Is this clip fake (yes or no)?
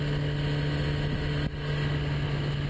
no